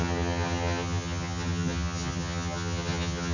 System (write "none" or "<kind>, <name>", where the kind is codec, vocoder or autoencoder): vocoder, HiFi-GAN